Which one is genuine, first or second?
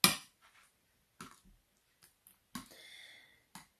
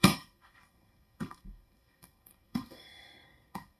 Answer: first